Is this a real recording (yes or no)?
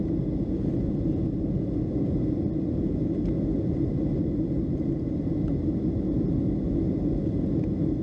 yes